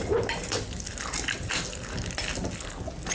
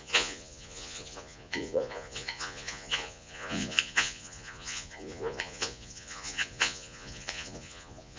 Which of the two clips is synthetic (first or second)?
second